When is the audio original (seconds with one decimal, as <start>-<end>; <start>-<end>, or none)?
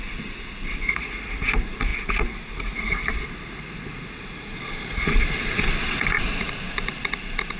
none